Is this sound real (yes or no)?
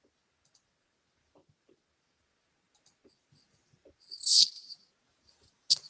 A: yes